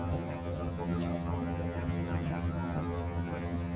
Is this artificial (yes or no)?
yes